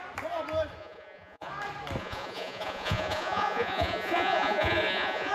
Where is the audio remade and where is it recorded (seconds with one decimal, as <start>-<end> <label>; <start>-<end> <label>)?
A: 0.0-0.8 recorded; 0.8-1.5 remade; 1.5-2.0 recorded; 2.0-5.3 remade

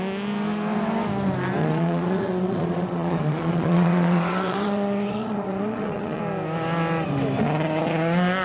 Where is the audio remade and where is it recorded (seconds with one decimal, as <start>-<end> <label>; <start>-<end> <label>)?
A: 0.0-1.6 recorded; 1.6-6.2 remade; 6.2-8.4 recorded

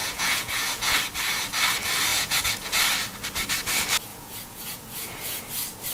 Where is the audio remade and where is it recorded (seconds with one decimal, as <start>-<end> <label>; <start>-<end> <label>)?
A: 0.0-1.0 remade; 1.0-2.1 recorded; 2.1-2.8 remade; 2.8-4.1 recorded; 4.1-5.4 remade; 5.4-5.9 recorded

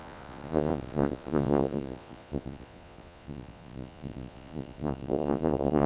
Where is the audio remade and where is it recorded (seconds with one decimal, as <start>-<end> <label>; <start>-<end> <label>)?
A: 0.0-5.9 remade

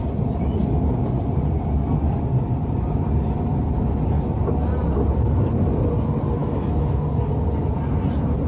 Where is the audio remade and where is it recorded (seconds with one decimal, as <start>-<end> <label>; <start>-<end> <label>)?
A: 0.0-8.5 recorded

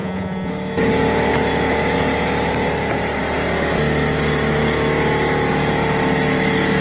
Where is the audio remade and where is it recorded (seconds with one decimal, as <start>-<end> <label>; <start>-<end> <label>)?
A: 0.0-0.5 remade; 0.5-6.8 recorded